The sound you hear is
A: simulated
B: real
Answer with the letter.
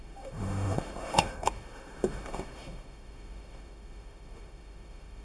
A